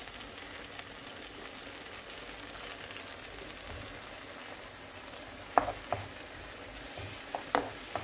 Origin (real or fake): real